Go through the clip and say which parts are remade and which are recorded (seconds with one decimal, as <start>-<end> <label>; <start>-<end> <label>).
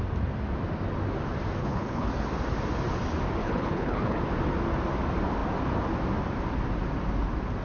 0.0-1.6 recorded; 1.6-2.1 remade; 2.1-3.4 recorded; 3.4-4.2 remade; 4.2-7.6 recorded